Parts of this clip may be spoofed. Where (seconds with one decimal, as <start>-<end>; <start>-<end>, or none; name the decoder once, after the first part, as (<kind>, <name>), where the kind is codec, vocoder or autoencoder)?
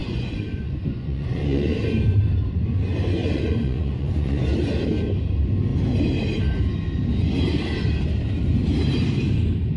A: 0.0-1.8 (vocoder, Vocos); 3.2-4.4